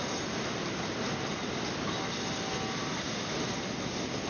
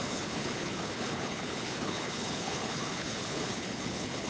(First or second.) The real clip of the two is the first